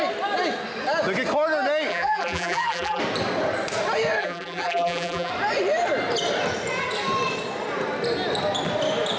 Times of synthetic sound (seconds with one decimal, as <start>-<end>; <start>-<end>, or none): 1.9-3.0; 4.2-5.3